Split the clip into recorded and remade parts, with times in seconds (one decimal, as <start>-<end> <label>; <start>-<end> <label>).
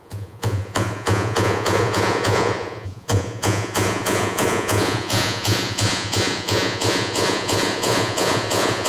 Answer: 0.0-8.9 remade